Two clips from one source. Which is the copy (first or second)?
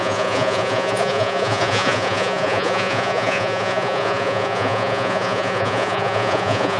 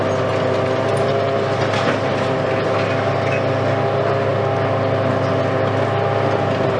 first